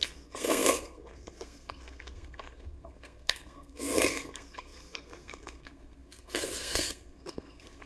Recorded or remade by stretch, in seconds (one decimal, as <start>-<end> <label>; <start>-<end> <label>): 0.0-7.9 remade